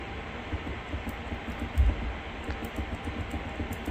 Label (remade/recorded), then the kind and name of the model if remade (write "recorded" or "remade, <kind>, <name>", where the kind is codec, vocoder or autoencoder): recorded